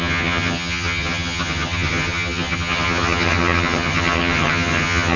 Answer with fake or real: fake